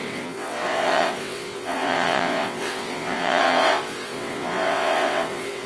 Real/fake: fake